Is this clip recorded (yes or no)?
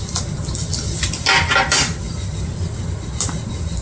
yes